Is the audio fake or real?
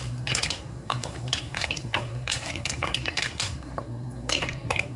fake